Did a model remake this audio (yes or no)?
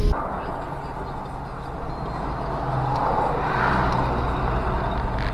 no